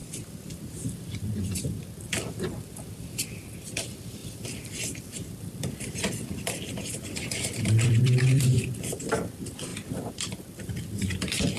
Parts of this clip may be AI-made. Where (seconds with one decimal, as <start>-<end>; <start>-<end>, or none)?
3.3-11.6

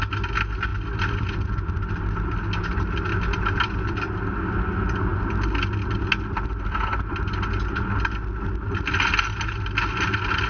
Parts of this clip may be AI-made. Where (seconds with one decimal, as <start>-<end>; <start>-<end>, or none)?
none

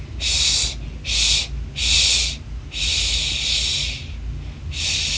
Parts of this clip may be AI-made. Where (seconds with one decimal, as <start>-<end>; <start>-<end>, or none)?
none

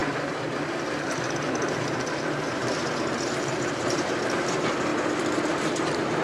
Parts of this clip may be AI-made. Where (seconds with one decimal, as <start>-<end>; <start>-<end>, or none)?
0.0-4.9; 5.6-6.2

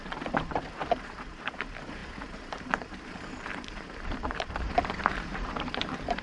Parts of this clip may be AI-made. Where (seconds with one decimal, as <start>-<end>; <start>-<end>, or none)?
0.0-6.2

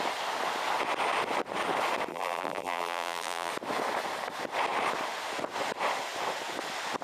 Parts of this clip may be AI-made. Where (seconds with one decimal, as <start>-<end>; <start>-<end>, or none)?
2.1-3.5

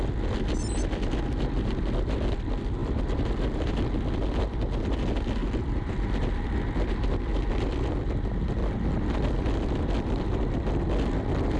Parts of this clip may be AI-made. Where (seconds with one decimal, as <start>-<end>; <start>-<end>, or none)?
2.8-4.1; 5.4-7.5; 8.6-9.3

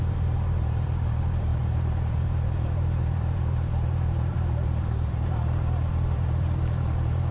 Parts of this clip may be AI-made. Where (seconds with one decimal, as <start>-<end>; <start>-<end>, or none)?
0.0-7.3